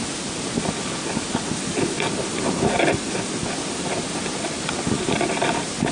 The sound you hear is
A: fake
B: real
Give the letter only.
B